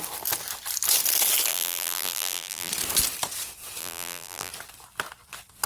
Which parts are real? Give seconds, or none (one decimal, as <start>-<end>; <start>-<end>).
0.0-1.5; 2.7-3.8; 4.5-5.7